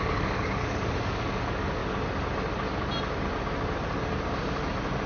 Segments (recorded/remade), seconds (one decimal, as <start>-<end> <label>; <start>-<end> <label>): 0.0-1.8 remade; 1.8-5.1 recorded